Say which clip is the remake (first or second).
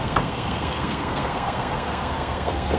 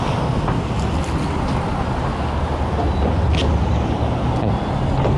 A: first